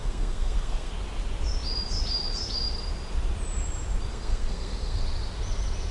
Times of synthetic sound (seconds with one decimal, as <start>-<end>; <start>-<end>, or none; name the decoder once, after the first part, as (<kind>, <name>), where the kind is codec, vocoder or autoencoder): 0.0-0.9 (codec, SNAC); 4.1-5.0